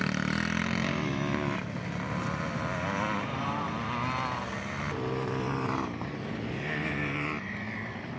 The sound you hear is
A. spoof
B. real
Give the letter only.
B